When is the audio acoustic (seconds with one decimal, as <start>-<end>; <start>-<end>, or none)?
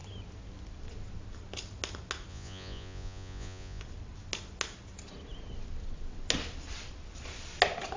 0.0-2.3; 3.8-8.0